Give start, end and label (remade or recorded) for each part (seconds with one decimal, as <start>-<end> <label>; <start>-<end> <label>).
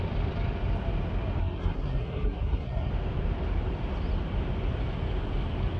0.0-1.4 recorded; 1.4-2.9 remade; 2.9-5.8 recorded